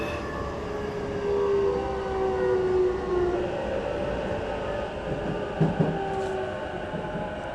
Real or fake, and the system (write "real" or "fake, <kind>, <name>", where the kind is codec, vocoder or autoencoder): real